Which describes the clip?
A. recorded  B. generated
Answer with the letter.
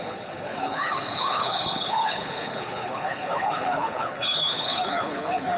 B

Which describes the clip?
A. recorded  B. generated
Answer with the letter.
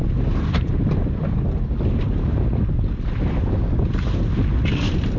A